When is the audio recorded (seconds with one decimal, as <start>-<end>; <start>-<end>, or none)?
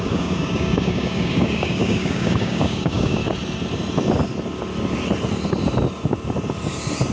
3.2-7.1